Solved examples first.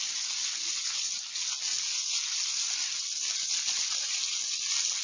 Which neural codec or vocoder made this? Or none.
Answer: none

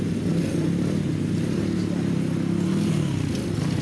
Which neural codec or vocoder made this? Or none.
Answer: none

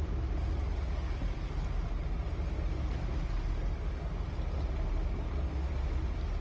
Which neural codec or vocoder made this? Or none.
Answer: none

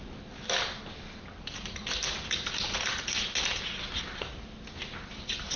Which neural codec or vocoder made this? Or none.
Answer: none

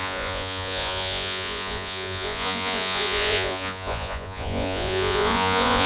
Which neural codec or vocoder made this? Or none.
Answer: vocoder, Vocos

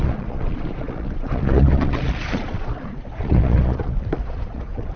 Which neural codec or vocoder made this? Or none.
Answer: vocoder, Vocos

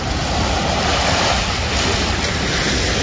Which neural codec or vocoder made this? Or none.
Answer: none